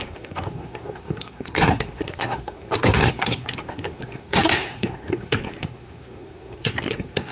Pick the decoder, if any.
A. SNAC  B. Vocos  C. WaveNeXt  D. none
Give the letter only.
A